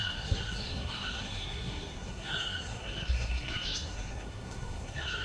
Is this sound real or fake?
fake